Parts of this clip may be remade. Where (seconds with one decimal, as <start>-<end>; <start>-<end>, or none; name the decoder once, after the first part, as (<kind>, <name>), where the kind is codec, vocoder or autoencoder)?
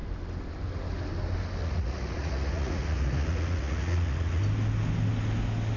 1.6-4.4 (vocoder, Vocos)